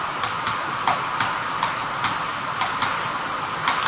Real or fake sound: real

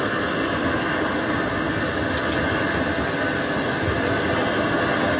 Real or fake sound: real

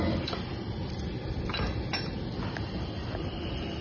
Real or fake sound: real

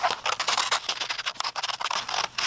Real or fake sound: real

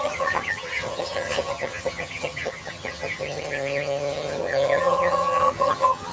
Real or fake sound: fake